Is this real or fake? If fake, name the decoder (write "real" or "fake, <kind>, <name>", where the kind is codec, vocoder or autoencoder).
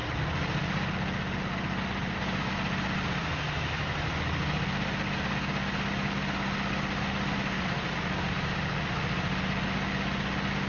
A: real